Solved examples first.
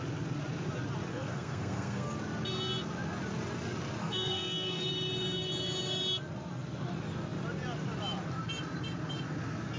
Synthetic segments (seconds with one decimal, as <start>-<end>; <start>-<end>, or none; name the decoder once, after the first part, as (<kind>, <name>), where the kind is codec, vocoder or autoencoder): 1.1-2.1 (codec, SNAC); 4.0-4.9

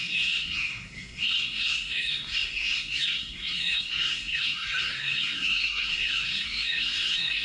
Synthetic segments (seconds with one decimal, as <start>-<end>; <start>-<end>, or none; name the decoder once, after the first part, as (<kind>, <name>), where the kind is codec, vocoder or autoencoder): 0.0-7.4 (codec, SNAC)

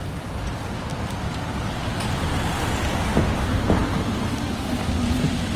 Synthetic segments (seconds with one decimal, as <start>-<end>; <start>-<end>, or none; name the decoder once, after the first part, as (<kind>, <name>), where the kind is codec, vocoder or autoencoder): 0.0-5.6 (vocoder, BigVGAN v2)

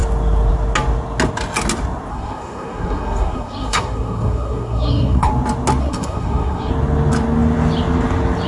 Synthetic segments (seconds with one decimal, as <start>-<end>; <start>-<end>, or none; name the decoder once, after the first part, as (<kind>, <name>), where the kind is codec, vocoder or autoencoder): 2.1-5.3 (codec, SNAC); 5.8-6.7

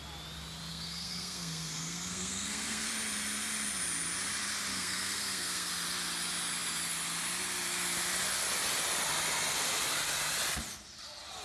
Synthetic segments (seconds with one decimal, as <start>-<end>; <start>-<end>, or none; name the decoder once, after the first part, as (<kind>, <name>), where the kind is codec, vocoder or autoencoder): 0.7-2.9 (codec, SNAC); 4.7-5.7

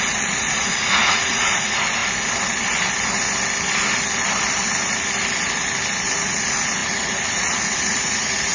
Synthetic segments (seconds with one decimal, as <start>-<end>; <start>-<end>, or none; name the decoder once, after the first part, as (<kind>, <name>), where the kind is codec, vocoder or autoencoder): 0.0-2.0 (vocoder, Vocos); 6.1-8.5